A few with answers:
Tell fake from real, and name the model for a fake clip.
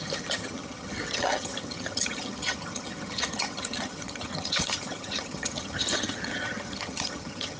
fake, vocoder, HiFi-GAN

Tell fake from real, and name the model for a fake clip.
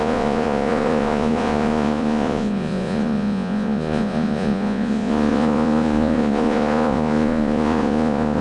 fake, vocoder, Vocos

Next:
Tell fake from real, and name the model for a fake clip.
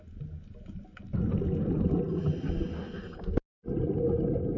real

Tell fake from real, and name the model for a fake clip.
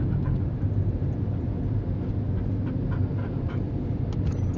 real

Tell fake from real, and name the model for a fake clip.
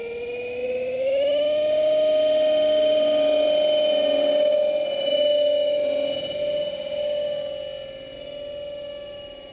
real